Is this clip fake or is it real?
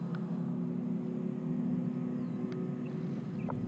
real